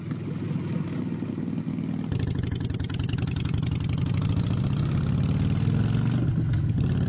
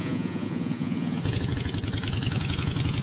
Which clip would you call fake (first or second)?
second